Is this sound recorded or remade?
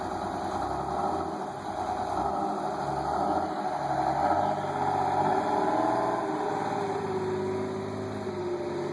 recorded